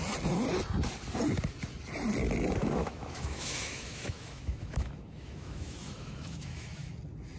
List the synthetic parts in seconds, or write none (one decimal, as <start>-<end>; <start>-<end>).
2.6-6.9